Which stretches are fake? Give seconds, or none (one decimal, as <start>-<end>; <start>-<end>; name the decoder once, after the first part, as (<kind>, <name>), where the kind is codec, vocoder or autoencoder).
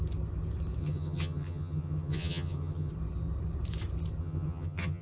0.8-2.9 (vocoder, HiFi-GAN); 4.2-5.0